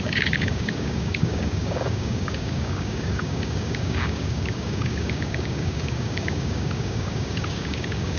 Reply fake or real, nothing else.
fake